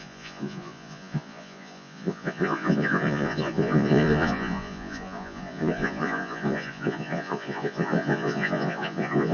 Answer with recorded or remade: remade